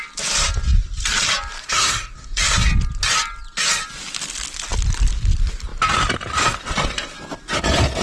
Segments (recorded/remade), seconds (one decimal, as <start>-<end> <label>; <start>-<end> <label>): 0.0-1.6 recorded; 1.6-2.4 remade; 2.4-8.0 recorded